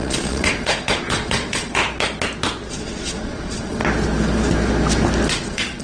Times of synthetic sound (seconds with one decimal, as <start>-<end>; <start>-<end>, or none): 0.0-1.8; 2.7-3.8; 5.3-5.8